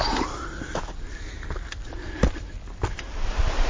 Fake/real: fake